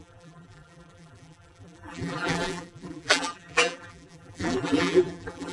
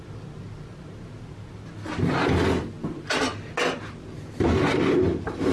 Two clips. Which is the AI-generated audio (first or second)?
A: first